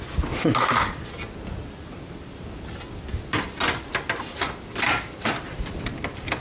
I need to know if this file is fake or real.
real